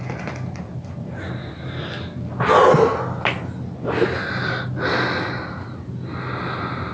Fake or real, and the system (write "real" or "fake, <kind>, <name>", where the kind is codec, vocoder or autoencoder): real